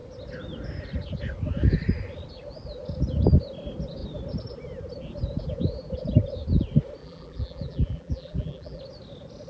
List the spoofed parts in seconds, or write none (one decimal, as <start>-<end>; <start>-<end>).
7.0-8.8